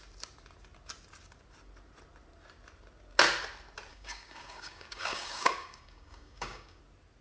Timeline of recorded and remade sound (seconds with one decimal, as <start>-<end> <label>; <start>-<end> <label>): 0.0-3.9 recorded; 3.9-6.8 remade; 6.8-7.2 recorded